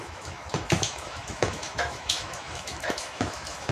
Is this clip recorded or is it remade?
remade